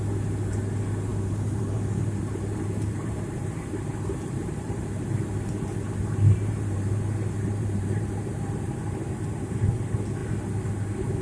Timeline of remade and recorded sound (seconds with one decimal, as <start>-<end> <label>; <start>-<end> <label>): 0.0-1.1 recorded; 1.1-5.0 remade; 5.0-6.0 recorded; 6.0-9.4 remade; 9.4-11.2 recorded